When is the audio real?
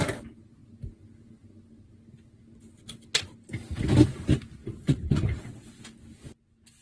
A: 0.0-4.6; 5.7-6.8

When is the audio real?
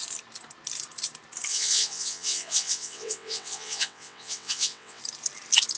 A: 0.0-1.5; 5.0-5.8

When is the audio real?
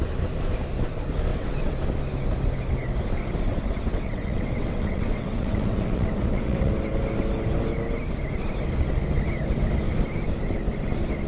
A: 0.0-1.3; 1.8-3.9; 6.7-11.3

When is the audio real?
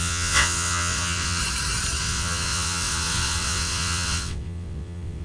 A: 1.4-2.0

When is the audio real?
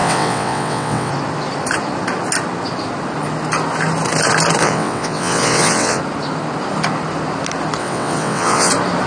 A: 1.1-4.6; 6.0-7.8; 8.7-9.1